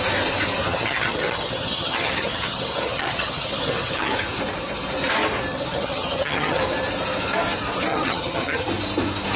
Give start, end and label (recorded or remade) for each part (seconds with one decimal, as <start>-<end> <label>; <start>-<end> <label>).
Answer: 0.0-0.6 recorded; 0.6-4.1 remade; 4.1-5.5 recorded; 5.5-6.6 remade; 6.6-7.9 recorded; 7.9-8.7 remade; 8.7-9.4 recorded